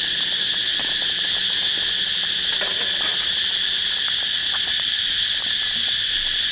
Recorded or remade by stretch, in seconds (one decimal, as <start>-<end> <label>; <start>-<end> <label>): 0.0-4.4 recorded; 4.4-5.0 remade; 5.0-6.5 recorded